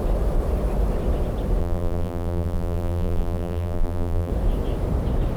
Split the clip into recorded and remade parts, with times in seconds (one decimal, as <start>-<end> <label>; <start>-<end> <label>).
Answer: 0.0-1.6 recorded; 1.6-4.3 remade; 4.3-5.4 recorded